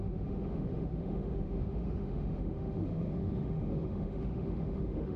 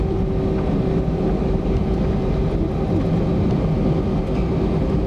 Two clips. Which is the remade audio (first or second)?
first